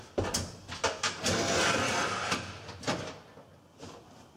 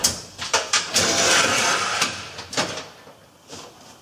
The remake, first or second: second